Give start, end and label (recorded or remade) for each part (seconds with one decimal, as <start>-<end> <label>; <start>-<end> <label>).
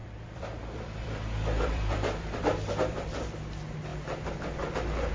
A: 0.0-3.1 remade; 3.1-5.1 recorded